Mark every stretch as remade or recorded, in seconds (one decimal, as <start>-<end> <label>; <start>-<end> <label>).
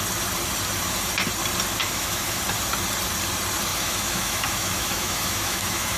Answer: 0.0-1.8 recorded; 1.8-2.4 remade; 2.4-3.7 recorded; 3.7-6.0 remade